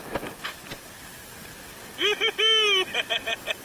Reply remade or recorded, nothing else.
recorded